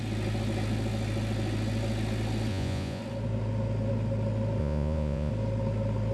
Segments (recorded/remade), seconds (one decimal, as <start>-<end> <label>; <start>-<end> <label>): 0.0-2.5 recorded; 2.5-3.0 remade; 3.0-4.6 recorded; 4.6-5.3 remade; 5.3-6.1 recorded